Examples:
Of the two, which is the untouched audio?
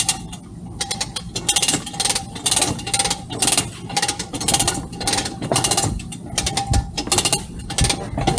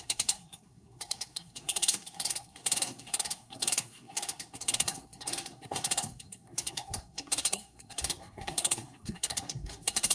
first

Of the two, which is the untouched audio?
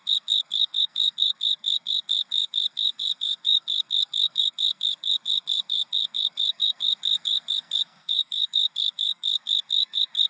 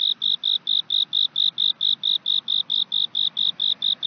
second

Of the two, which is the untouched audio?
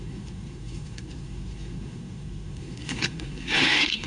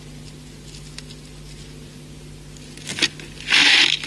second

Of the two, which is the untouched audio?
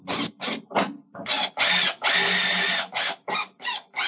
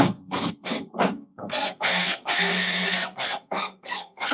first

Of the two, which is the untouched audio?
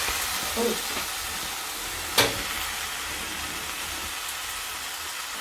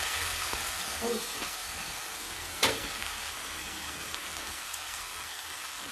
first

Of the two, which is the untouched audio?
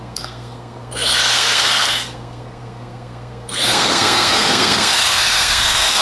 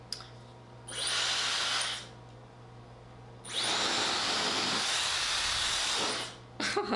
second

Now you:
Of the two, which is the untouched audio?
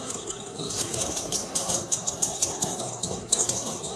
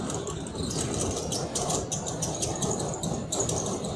second